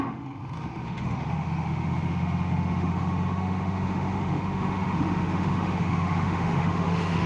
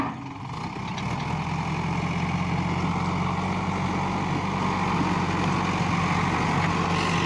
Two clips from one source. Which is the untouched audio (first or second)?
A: second